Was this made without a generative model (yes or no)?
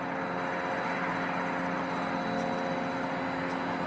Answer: yes